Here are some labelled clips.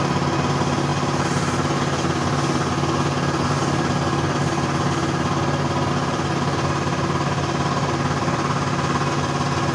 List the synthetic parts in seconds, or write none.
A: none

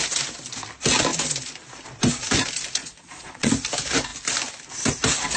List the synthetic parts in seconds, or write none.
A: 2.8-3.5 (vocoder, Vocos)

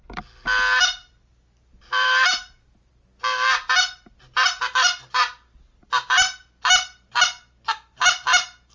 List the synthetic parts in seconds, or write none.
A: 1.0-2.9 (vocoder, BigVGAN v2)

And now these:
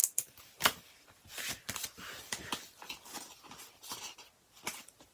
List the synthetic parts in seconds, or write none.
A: 0.0-3.1 (vocoder, BigVGAN v2)